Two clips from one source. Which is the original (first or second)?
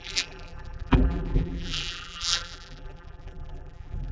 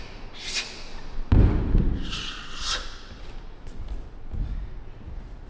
second